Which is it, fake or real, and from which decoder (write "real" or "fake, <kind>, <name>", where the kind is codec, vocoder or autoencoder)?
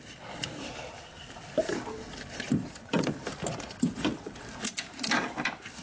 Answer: real